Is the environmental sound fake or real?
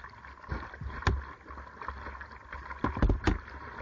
real